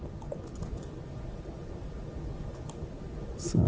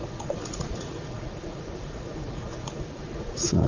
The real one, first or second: first